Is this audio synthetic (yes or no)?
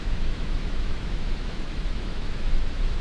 yes